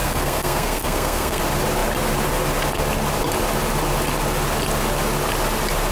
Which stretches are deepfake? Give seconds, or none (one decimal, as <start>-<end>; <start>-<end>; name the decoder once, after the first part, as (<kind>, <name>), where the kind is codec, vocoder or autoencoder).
0.0-1.4 (codec, SNAC)